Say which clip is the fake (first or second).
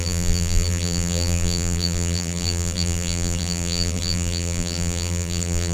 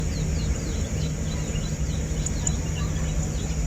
first